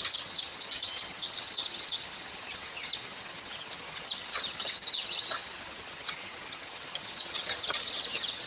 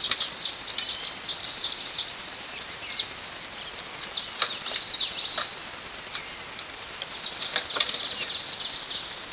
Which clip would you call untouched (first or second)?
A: second